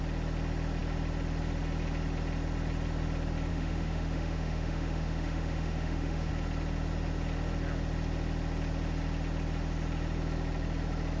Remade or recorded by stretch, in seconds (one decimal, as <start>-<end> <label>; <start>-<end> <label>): 0.0-3.5 recorded; 3.5-6.3 remade; 6.3-11.2 recorded